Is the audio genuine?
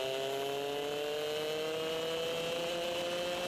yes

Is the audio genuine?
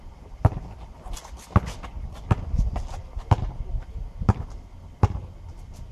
yes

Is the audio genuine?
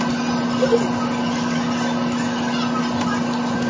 yes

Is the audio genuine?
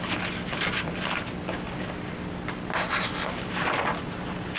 yes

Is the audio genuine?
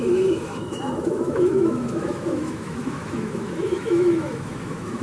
no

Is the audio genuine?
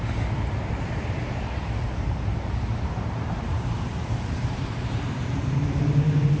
no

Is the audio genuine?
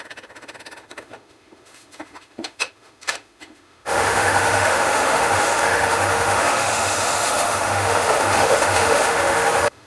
no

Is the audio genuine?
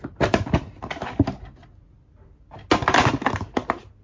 yes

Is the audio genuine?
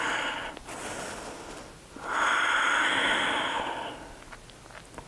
yes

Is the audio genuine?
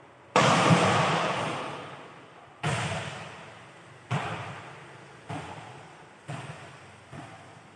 no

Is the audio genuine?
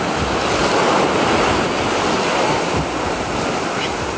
yes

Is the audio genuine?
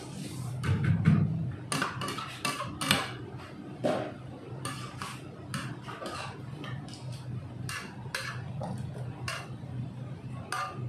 yes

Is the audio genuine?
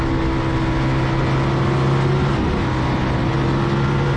yes